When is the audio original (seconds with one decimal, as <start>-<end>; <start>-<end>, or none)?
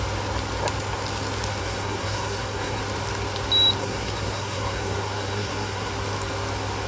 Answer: 0.0-1.6; 2.8-3.8; 5.9-6.9